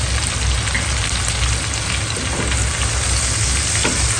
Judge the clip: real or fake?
real